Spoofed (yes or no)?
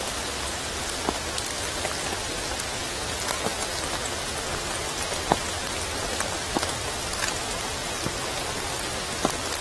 no